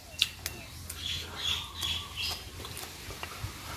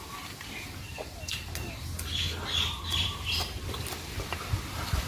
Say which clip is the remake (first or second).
second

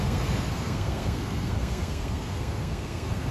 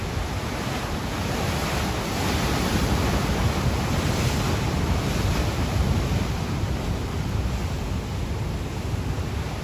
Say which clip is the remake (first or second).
first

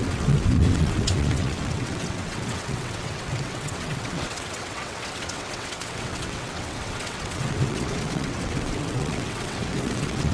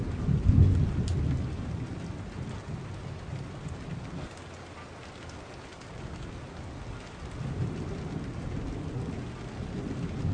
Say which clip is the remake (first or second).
first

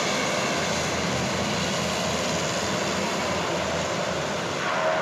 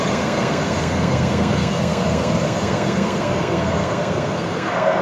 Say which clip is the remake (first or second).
second